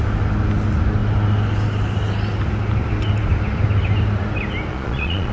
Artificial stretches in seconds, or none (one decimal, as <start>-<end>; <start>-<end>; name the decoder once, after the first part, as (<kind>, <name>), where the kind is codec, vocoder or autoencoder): 4.7-5.3 (vocoder, Vocos)